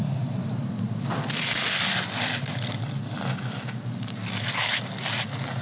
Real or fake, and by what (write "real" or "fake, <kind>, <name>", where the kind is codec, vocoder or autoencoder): real